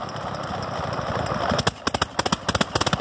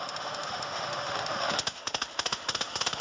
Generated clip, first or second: second